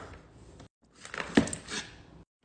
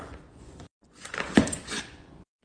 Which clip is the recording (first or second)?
first